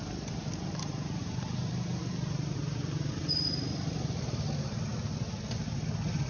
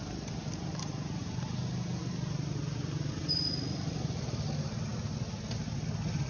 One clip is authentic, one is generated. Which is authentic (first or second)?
second